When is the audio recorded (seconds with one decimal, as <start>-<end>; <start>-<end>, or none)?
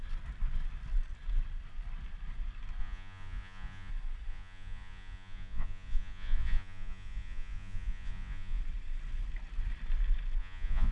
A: 0.0-2.8; 3.9-4.3; 8.6-10.4